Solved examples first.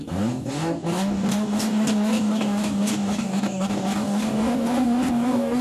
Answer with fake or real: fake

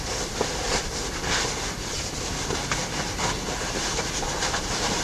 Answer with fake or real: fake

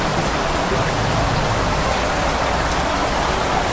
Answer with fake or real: real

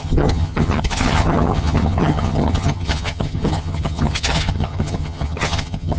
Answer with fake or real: fake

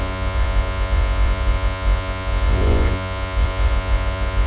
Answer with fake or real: fake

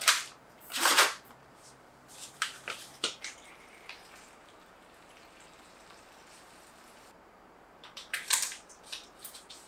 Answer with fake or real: fake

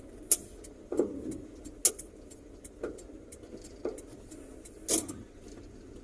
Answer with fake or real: real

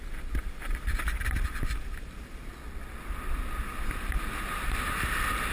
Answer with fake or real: real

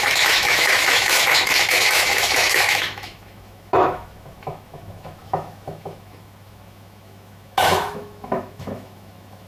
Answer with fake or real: fake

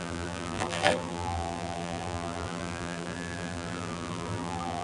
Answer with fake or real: fake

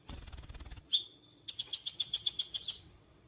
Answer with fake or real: fake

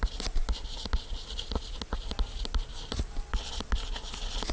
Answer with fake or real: real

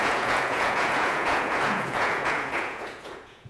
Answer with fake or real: fake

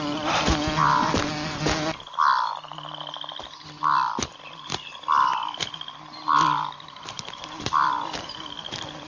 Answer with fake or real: real